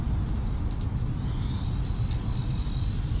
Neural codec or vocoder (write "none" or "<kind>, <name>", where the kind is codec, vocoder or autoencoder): none